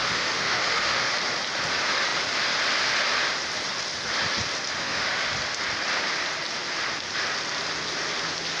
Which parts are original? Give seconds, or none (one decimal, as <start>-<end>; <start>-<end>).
1.1-4.8; 5.3-8.6